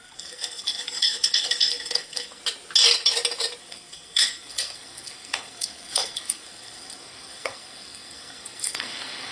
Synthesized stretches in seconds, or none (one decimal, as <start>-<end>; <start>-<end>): 0.0-2.4; 3.6-9.3